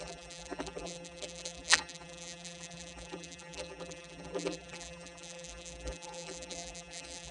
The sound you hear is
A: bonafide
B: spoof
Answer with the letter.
B